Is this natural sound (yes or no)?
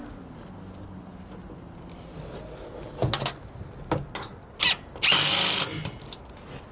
yes